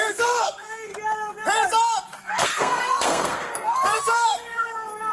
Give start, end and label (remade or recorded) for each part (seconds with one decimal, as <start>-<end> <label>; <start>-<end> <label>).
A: 0.0-0.9 remade; 0.9-2.2 recorded; 2.2-5.1 remade